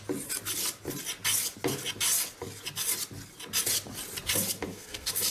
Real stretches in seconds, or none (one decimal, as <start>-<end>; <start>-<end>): 0.0-4.7